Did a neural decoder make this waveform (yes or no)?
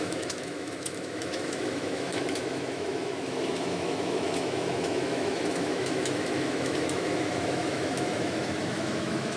yes